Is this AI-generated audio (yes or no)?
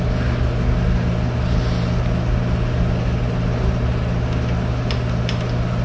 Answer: no